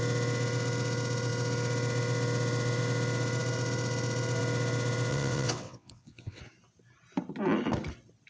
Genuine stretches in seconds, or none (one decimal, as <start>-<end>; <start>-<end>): 0.0-5.1; 6.4-8.3